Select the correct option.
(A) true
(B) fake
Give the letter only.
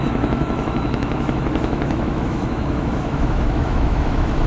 B